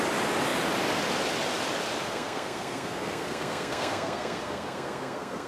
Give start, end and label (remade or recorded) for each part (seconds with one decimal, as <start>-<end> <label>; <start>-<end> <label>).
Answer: 0.0-2.0 recorded; 2.0-5.5 remade